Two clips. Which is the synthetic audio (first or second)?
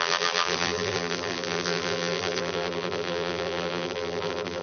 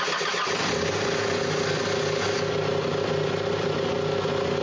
first